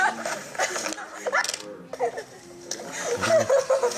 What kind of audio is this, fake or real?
real